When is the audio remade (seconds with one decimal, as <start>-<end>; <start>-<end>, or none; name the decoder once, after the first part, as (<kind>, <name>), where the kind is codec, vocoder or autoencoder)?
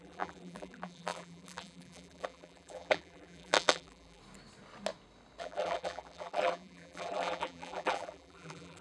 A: 0.0-4.2 (vocoder, BigVGAN v2); 5.4-8.8